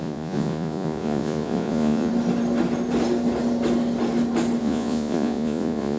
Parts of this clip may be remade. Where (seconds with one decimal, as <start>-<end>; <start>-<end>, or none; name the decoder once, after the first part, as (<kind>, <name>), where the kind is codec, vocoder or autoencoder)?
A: 0.0-2.1 (vocoder, Vocos); 4.6-6.0